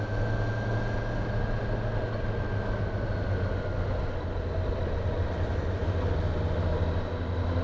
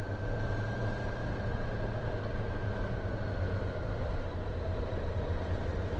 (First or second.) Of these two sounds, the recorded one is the first